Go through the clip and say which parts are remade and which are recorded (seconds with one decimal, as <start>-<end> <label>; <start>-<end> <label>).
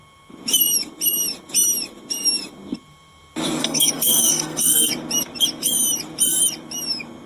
0.0-3.6 recorded; 3.6-4.9 remade; 4.9-7.3 recorded